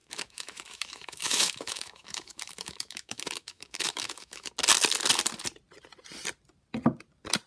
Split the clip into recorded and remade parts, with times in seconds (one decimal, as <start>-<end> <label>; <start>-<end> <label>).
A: 0.0-4.5 remade; 4.5-7.5 recorded

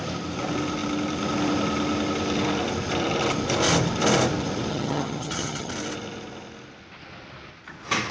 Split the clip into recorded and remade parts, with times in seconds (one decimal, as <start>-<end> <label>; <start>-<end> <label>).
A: 0.0-4.7 recorded; 4.7-5.7 remade; 5.7-8.1 recorded

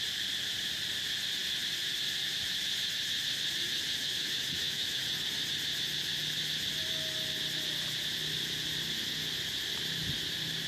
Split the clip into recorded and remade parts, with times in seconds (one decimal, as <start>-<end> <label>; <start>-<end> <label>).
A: 0.0-4.0 recorded; 4.0-5.0 remade; 5.0-10.7 recorded

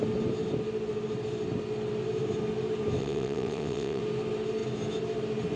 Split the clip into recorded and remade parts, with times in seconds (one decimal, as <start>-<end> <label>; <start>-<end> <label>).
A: 0.0-3.0 recorded; 3.0-4.0 remade; 4.0-5.6 recorded

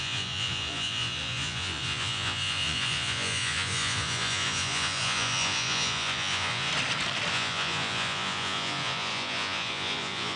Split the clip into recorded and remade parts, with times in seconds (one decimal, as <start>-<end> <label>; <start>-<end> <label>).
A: 0.0-6.7 remade; 6.7-7.3 recorded; 7.3-10.4 remade